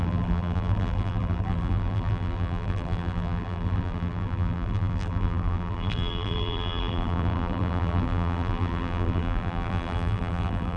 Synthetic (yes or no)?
yes